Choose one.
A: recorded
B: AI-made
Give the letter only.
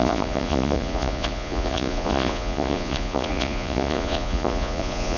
B